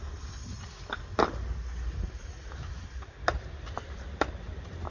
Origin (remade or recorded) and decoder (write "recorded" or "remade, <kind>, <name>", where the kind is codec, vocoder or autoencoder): recorded